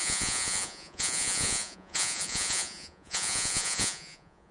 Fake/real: fake